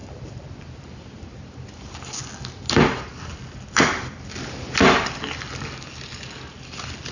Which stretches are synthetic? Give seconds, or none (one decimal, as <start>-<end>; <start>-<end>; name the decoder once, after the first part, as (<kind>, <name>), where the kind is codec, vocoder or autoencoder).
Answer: none